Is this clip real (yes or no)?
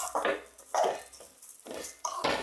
yes